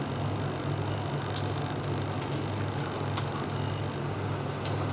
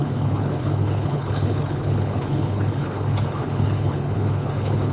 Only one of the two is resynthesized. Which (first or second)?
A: second